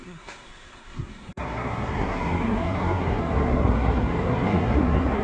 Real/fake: fake